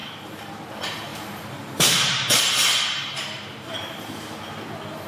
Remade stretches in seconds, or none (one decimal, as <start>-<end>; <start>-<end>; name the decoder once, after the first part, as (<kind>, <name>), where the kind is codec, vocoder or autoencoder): 0.0-0.5 (vocoder, BigVGAN v2); 1.1-4.2